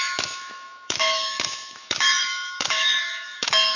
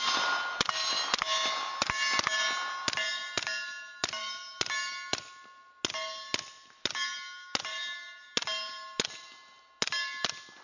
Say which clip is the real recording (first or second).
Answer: second